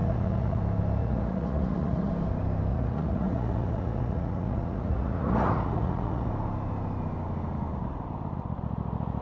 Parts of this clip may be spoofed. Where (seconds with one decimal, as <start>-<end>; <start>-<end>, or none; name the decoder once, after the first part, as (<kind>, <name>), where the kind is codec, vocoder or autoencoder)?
0.0-0.6 (vocoder, Vocos); 1.0-2.1; 2.7-6.3

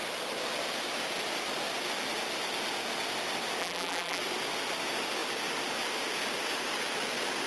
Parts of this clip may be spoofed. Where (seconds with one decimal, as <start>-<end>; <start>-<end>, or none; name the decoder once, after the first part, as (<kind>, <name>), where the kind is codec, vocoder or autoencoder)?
3.6-4.2 (vocoder, BigVGAN v2)

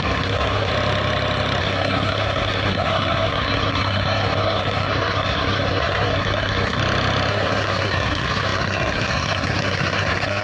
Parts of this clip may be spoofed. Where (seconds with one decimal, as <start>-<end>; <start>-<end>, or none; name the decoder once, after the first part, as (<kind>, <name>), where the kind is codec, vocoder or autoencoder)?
0.0-0.7 (codec, SNAC); 1.6-6.8; 7.3-10.4

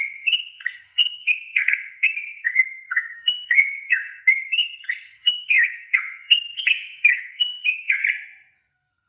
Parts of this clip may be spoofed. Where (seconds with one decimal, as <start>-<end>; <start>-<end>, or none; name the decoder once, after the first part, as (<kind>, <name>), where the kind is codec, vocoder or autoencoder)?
0.0-8.0 (codec, SNAC); 8.7-9.1